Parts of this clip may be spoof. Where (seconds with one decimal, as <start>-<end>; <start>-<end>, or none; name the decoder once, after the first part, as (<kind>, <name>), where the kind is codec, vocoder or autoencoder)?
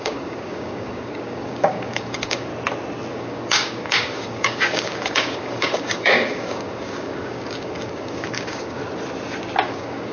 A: 0.0-2.5 (codec, DAC); 3.1-8.8; 9.6-10.1